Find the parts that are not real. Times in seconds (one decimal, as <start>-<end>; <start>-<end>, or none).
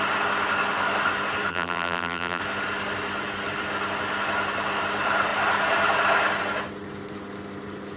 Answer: 1.5-2.4